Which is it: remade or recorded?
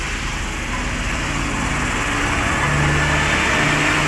recorded